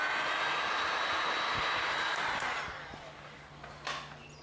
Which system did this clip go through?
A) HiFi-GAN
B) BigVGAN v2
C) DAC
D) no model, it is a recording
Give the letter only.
D